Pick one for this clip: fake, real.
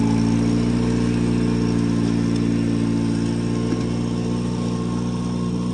real